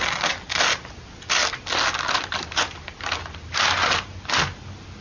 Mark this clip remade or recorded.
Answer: recorded